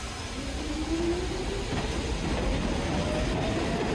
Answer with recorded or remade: recorded